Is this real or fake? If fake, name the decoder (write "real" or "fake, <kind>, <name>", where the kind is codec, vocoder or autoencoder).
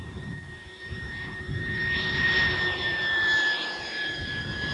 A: fake, vocoder, BigVGAN v2